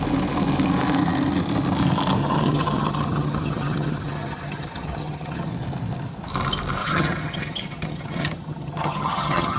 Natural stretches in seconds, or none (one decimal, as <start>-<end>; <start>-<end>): 0.0-2.2; 5.5-6.8